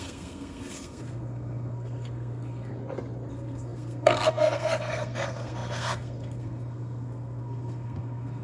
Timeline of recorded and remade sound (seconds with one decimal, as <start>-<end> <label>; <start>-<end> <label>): 0.0-2.7 remade; 2.7-3.3 recorded; 3.3-8.4 remade